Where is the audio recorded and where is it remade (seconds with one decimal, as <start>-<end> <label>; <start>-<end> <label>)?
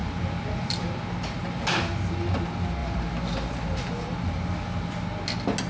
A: 0.0-2.8 recorded; 2.8-4.3 remade; 4.3-5.7 recorded